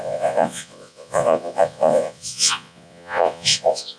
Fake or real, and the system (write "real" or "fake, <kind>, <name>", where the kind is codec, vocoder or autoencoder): fake, vocoder, Vocos